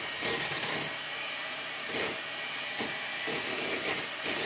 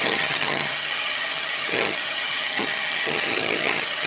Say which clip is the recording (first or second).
first